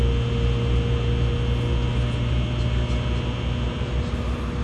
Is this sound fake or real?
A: real